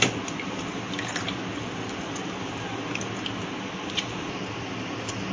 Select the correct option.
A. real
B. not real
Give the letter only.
A